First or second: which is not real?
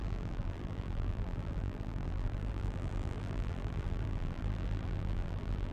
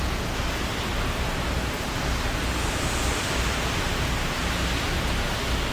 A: first